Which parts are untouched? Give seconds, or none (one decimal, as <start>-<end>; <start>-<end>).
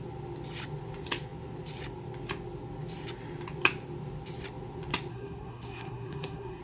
0.0-5.1